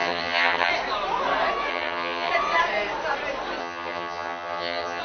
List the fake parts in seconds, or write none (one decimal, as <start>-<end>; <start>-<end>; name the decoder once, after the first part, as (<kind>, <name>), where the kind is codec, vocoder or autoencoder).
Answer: 0.0-0.7 (vocoder, HiFi-GAN); 1.7-2.3; 3.6-5.0